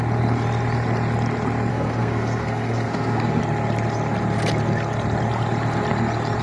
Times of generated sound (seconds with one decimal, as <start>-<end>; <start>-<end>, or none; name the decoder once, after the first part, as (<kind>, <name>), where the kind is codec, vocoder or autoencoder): 1.7-3.4 (codec, SNAC)